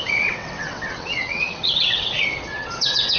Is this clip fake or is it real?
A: fake